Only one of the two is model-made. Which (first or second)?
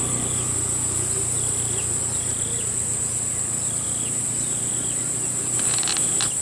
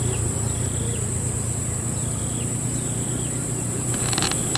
second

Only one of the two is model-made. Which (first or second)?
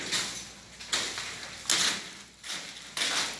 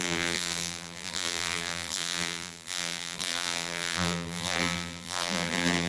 second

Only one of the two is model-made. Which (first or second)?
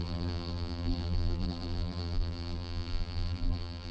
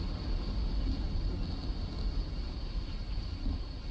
first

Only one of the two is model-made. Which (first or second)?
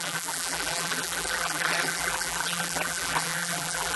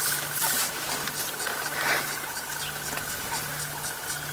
first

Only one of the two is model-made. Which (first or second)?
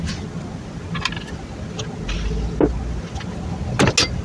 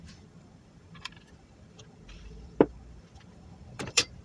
second